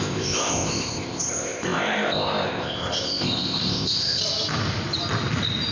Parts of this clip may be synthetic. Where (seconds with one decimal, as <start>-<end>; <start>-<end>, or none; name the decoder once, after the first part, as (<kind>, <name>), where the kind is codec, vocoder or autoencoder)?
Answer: 0.0-4.2 (codec, ZipCodec)